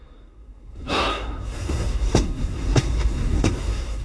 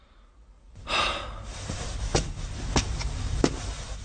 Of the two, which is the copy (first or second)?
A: first